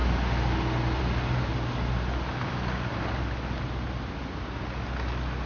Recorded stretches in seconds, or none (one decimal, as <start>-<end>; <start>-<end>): 0.0-5.5